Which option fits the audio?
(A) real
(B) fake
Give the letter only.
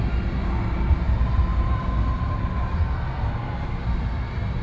A